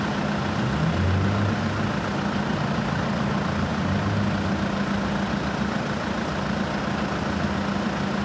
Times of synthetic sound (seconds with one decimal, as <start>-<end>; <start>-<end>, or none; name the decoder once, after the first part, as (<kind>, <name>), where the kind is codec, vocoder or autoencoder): none

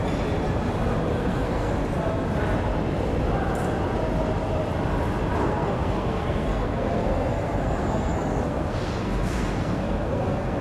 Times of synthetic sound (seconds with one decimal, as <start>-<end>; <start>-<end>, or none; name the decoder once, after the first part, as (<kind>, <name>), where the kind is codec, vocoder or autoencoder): 1.1-1.7 (codec, SNAC); 5.4-10.6

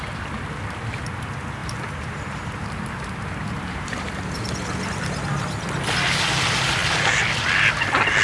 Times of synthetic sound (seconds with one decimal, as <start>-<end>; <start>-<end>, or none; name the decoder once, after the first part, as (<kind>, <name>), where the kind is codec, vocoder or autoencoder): 1.6-4.2 (vocoder, BigVGAN v2)

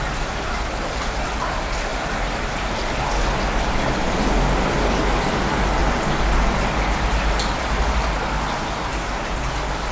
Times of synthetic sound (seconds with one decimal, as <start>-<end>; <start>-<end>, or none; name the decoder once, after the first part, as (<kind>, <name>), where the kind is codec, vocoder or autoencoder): none

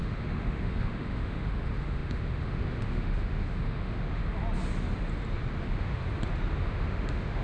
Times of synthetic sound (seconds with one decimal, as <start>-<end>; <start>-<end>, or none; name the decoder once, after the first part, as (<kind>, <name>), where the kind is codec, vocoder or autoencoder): 0.0-4.2 (autoencoder, DAC-VAE); 5.6-6.0; 6.6-7.4

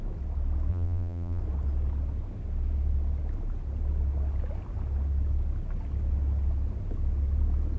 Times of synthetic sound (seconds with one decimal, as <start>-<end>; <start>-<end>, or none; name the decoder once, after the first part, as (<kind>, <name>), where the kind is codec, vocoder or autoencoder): 0.7-1.4 (vocoder, BigVGAN v2)